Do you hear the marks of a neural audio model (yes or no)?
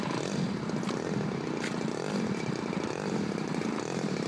no